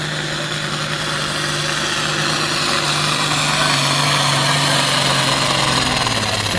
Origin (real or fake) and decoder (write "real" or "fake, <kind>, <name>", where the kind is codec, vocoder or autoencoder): real